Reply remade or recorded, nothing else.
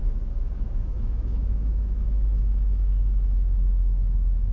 remade